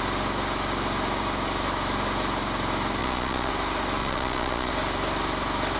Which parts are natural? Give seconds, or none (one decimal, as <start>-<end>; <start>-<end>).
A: 0.0-3.0; 3.5-4.0; 4.7-5.8